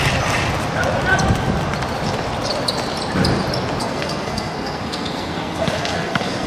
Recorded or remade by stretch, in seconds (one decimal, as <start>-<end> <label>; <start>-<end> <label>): 0.0-3.8 recorded; 3.8-6.5 remade